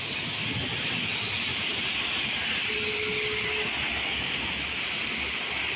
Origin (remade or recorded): recorded